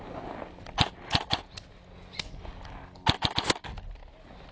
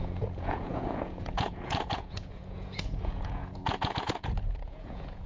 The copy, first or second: second